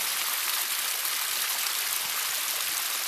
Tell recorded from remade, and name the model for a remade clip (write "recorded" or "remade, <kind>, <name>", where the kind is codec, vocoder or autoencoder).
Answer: recorded